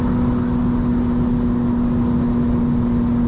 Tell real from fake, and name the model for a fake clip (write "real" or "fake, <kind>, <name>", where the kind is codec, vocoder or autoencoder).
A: real